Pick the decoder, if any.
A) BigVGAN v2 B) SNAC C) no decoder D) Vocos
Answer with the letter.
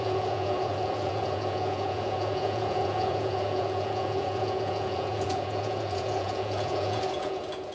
D